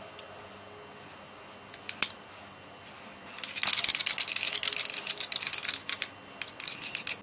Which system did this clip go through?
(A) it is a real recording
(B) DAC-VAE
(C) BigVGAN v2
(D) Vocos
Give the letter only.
A